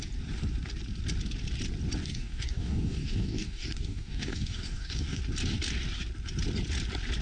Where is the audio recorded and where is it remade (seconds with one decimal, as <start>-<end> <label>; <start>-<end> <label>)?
0.0-2.0 recorded; 2.0-5.2 remade; 5.2-7.2 recorded